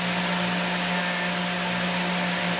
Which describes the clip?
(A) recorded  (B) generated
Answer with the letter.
A